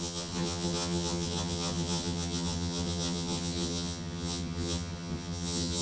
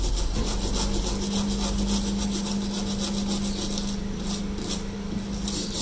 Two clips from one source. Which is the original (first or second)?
second